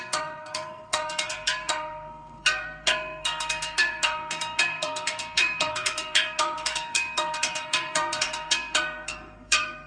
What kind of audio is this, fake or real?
fake